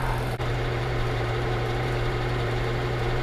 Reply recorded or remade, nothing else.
remade